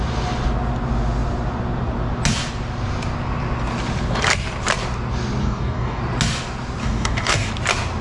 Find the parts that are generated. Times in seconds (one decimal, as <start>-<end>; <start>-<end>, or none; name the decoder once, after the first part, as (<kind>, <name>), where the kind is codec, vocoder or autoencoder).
5.4-6.0 (codec, DAC); 6.8-7.5